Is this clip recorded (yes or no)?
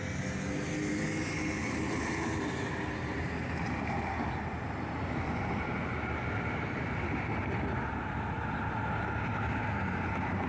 yes